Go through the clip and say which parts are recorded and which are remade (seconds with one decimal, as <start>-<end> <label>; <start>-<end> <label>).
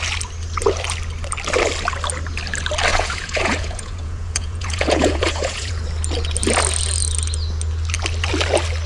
0.0-2.9 recorded; 2.9-5.8 remade; 5.8-8.9 recorded